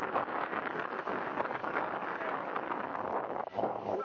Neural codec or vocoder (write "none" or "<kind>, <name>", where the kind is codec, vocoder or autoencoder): codec, DAC